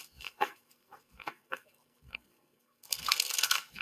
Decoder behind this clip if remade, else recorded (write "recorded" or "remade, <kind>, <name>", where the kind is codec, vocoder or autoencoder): remade, codec, SNAC